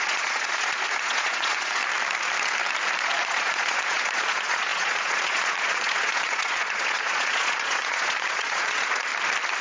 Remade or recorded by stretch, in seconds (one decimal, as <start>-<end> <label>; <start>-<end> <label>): 0.0-1.8 remade; 1.8-3.0 recorded; 3.0-9.1 remade; 9.1-9.6 recorded